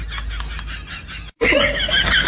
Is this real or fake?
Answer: real